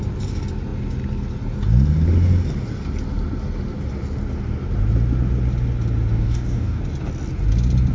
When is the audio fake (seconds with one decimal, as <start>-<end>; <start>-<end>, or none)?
6.1-6.8

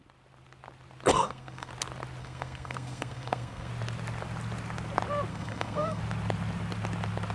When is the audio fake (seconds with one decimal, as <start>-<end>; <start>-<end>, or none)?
1.1-1.7; 2.2-3.7; 5.3-6.0

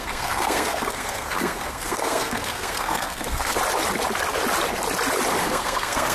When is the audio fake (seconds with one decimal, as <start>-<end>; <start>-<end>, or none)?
0.0-3.6; 5.4-6.1

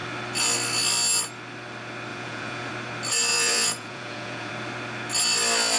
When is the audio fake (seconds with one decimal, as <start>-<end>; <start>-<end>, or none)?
2.1-2.7; 3.3-4.5